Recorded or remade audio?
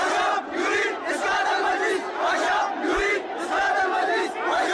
recorded